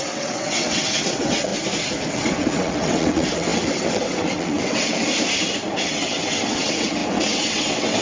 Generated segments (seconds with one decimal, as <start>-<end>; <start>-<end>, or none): 0.0-1.5; 2.1-5.1; 5.9-8.0